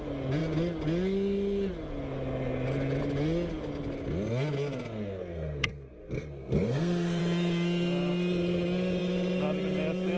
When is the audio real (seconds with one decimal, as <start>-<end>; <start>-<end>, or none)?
0.0-5.2; 7.2-10.2